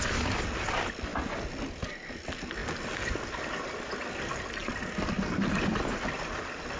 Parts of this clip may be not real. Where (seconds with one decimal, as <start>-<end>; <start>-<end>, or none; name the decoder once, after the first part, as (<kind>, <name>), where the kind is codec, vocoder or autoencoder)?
none

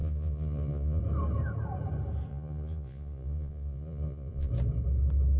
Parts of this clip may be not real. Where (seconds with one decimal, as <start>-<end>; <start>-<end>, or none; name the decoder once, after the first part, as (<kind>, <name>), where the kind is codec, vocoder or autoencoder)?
0.0-1.0 (vocoder, Vocos); 2.3-4.5

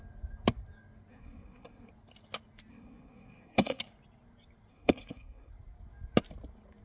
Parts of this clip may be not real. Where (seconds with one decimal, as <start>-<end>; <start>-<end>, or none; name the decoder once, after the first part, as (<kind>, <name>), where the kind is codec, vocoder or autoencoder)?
1.1-1.9 (codec, SNAC); 2.7-3.8; 4.7-5.5

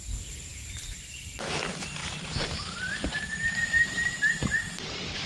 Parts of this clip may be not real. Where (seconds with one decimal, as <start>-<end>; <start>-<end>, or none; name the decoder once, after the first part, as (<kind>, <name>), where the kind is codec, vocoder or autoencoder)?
0.5-1.3 (vocoder, BigVGAN v2); 2.0-5.3